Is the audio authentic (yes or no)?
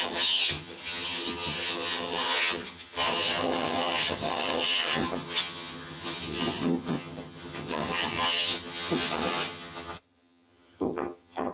no